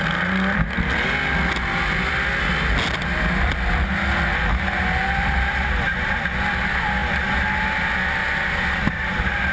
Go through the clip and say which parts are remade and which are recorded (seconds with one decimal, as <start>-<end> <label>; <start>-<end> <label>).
0.0-9.5 recorded